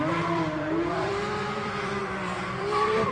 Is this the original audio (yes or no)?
no